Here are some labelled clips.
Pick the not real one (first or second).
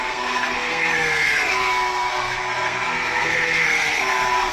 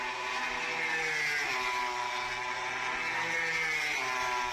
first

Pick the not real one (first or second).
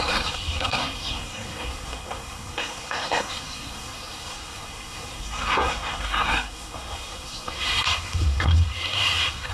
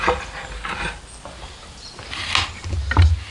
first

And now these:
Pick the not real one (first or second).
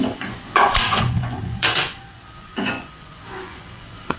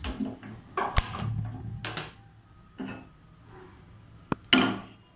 first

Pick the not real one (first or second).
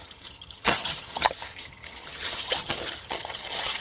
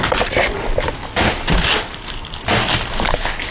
first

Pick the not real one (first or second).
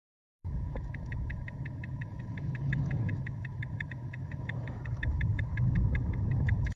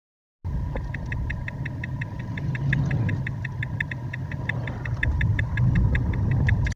first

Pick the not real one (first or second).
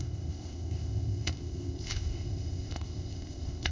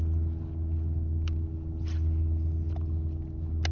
first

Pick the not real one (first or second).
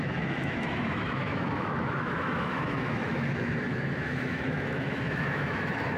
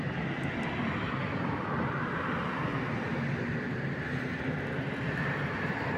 first